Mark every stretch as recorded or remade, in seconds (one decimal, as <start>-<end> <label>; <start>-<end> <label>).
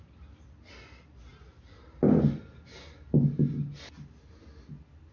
0.0-5.1 recorded